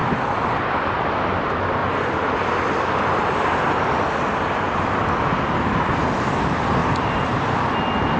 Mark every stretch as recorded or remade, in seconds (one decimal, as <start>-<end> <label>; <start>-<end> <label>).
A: 0.0-8.2 recorded